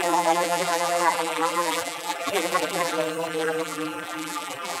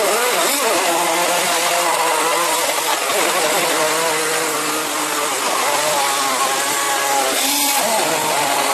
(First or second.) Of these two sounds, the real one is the second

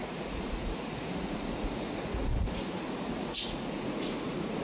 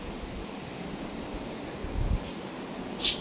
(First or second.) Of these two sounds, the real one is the second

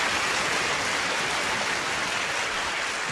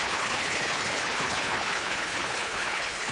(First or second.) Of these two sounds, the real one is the first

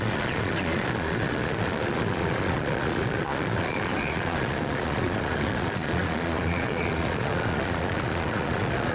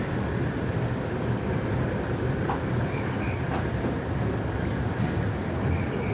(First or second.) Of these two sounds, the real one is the second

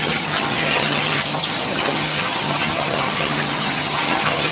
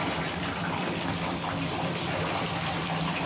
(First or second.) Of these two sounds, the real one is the second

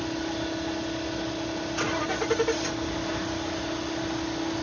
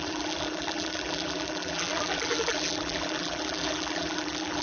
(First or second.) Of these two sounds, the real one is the first